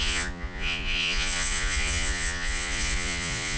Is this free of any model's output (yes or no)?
no